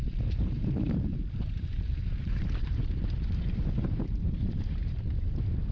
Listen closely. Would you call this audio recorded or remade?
remade